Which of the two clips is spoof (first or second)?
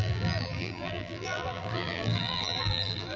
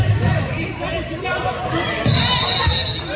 first